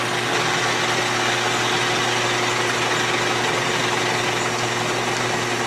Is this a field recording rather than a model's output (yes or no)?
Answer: yes